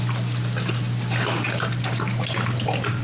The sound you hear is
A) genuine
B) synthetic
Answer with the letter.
A